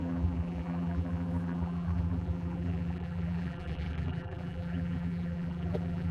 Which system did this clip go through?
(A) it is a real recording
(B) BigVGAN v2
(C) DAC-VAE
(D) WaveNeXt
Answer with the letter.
B